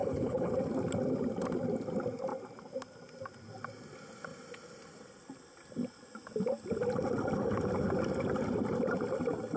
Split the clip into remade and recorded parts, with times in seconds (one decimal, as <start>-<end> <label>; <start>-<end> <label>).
0.0-0.5 remade; 0.5-9.6 recorded